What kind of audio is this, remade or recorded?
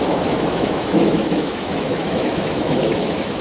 remade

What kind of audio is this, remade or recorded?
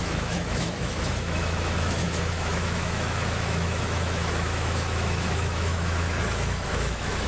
remade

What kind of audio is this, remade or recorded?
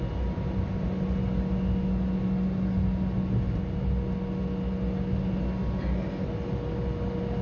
recorded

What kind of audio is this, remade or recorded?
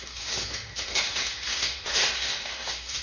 remade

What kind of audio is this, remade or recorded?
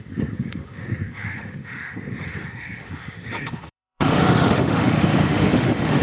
remade